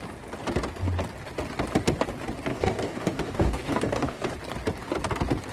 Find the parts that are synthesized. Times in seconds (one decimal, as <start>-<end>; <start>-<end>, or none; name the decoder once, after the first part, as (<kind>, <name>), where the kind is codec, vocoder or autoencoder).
2.5-4.3 (codec, DAC)

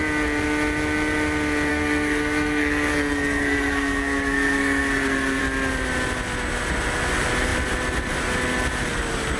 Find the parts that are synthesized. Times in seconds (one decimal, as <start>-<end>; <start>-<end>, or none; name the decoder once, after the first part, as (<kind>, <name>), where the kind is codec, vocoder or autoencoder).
1.7-5.4 (codec, SNAC)

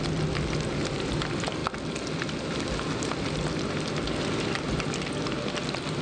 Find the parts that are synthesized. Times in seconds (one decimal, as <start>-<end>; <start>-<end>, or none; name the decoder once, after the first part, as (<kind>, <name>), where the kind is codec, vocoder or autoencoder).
none

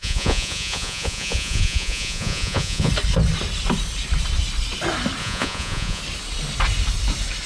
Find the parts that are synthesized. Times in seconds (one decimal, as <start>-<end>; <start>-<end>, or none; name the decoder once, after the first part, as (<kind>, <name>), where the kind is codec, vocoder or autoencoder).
0.0-2.9 (vocoder, Vocos); 5.2-6.0

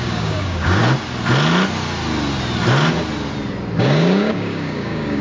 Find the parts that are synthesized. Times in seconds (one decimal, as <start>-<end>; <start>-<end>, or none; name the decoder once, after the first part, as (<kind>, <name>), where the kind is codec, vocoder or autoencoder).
0.0-0.8 (codec, DAC); 3.8-5.2

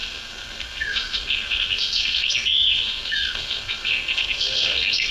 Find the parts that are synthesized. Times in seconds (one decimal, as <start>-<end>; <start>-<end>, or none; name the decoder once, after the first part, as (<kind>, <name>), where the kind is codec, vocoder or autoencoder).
0.0-5.1 (codec, SNAC)